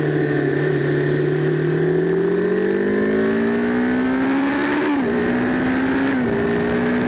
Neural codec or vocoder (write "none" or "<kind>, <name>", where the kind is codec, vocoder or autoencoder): none